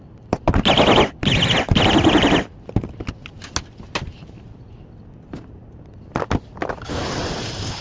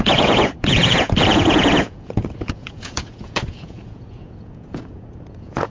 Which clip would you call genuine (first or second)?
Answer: first